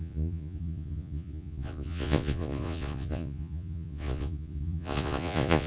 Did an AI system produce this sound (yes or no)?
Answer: yes